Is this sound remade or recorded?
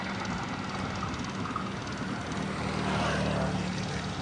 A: recorded